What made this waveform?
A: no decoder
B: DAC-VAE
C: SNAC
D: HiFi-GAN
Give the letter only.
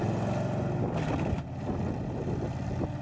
A